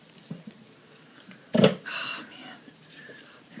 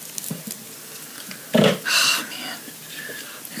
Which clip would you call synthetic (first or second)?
first